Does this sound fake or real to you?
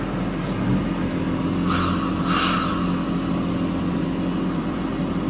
real